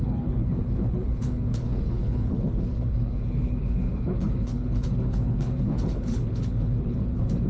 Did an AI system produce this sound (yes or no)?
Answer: yes